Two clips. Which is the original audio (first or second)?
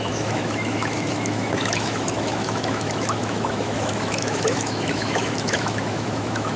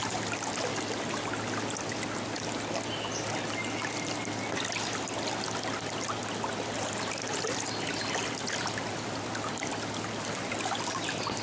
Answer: second